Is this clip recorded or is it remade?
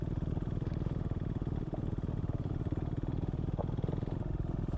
recorded